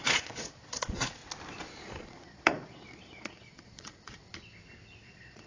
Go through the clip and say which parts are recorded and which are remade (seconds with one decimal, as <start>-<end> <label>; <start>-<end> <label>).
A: 0.0-1.2 remade; 1.2-1.9 recorded; 1.9-4.2 remade; 4.2-5.0 recorded; 5.0-5.5 remade